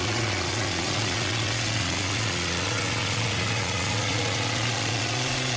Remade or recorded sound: remade